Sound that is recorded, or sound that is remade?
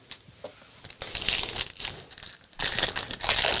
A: recorded